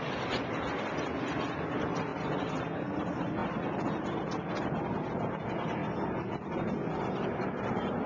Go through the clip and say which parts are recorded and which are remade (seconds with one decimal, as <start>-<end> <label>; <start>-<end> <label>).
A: 0.0-8.1 recorded